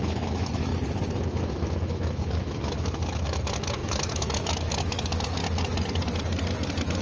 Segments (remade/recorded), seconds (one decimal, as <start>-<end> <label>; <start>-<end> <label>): 0.0-0.7 remade; 0.7-1.2 recorded; 1.2-5.4 remade; 5.4-7.0 recorded